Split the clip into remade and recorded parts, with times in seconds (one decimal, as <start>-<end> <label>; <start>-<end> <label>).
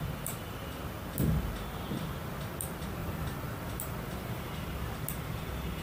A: 0.0-3.0 recorded; 3.0-4.5 remade; 4.5-5.8 recorded